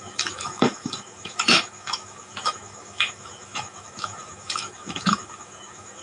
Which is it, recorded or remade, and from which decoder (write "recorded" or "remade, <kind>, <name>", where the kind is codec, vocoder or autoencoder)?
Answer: remade, autoencoder, DAC-VAE